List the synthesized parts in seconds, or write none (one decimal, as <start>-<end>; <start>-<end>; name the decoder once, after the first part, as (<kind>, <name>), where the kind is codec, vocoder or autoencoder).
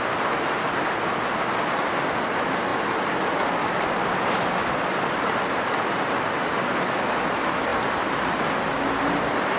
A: none